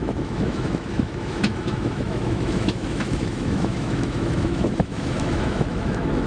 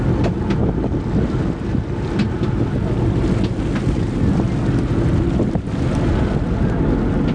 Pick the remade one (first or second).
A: first